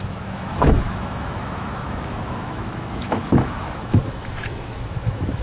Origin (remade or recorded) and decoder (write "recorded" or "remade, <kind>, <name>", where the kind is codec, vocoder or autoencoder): remade, autoencoder, DAC-VAE